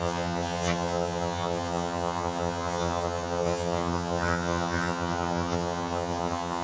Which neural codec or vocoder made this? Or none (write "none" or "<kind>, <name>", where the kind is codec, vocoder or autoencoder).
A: vocoder, HiFi-GAN